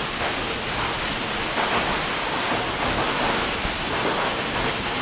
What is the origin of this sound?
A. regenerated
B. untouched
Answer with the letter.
B